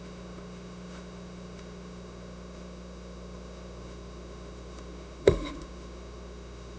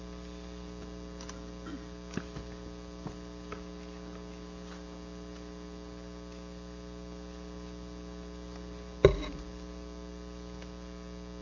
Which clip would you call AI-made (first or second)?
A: first